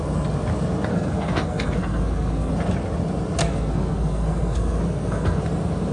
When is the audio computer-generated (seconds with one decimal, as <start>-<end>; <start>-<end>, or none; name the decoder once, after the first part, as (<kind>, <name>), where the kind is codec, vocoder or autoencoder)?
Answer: 0.9-2.5 (codec, SNAC); 3.4-5.4